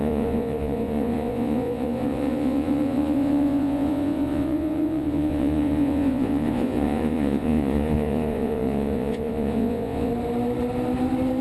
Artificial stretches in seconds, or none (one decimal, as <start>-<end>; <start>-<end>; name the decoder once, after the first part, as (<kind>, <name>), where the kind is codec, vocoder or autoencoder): 0.0-10.1 (vocoder, Vocos)